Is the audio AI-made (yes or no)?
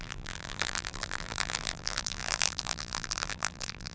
yes